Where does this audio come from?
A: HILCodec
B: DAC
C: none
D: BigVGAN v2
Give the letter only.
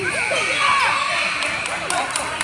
C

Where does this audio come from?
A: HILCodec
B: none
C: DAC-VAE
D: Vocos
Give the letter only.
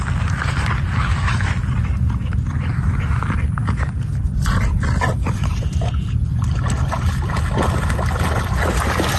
B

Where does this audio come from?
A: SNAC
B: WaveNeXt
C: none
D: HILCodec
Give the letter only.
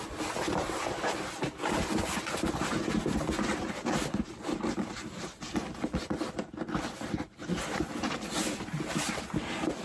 C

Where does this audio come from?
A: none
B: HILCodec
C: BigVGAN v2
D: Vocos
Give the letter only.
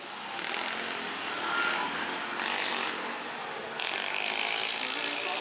A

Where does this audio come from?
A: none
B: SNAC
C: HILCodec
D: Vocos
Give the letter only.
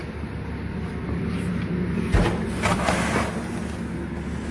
A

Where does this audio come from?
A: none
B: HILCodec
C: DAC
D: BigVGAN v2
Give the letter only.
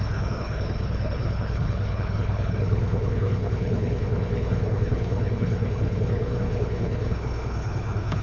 B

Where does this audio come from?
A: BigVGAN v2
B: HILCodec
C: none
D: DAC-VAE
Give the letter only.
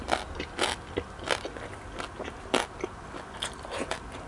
C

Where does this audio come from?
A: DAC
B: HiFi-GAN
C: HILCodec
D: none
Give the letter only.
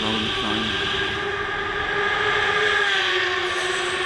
D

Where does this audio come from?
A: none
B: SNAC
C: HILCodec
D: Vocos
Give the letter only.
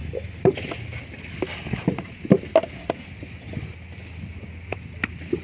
A